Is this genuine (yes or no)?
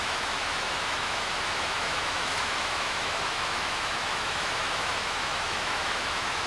no